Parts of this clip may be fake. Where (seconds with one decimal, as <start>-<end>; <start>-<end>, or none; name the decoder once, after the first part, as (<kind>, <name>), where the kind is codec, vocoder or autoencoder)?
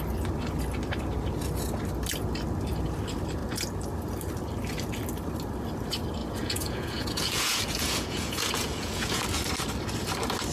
6.2-9.2 (vocoder, Vocos)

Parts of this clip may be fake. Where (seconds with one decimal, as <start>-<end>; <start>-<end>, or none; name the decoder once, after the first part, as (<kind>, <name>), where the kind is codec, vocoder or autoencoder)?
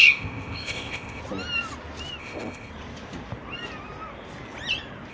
0.0-1.2 (codec, ZipCodec); 2.2-2.7